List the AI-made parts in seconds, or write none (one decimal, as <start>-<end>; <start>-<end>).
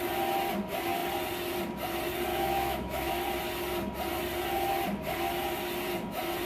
2.3-3.1